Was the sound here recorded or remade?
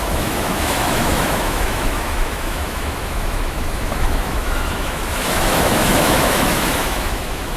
remade